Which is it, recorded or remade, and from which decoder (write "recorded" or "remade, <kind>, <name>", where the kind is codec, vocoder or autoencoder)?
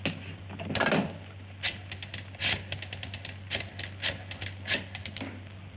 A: recorded